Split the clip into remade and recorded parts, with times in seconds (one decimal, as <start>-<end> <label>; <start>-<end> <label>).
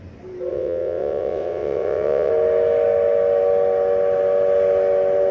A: 0.0-0.5 recorded; 0.5-2.3 remade; 2.3-5.3 recorded